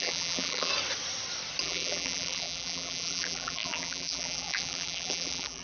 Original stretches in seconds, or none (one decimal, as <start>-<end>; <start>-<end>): 0.7-1.6